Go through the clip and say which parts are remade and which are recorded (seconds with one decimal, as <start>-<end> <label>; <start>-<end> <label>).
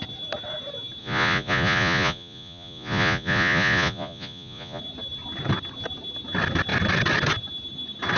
0.0-1.0 recorded; 1.0-4.8 remade; 4.8-8.2 recorded